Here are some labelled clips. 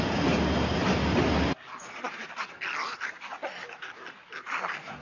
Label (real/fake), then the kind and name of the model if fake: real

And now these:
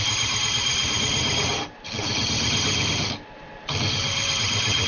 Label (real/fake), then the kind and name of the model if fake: real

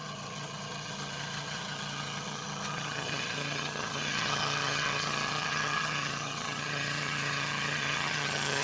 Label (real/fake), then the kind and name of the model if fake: fake, vocoder, HiFi-GAN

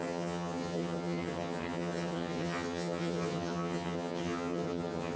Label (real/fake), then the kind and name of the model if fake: fake, vocoder, HiFi-GAN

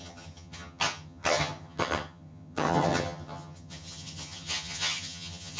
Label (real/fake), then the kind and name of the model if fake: fake, vocoder, HiFi-GAN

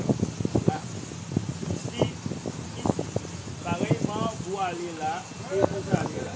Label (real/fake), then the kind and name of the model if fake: real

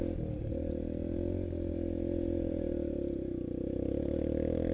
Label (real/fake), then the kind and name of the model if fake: real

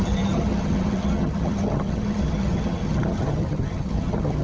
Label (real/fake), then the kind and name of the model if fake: fake, vocoder, HiFi-GAN